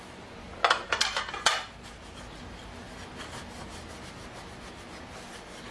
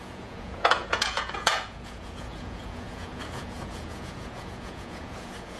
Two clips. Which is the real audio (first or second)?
first